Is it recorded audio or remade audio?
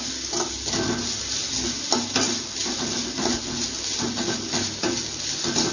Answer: recorded